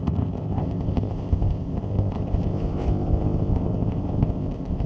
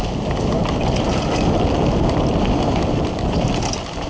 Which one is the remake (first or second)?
first